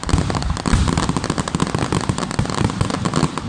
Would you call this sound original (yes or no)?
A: yes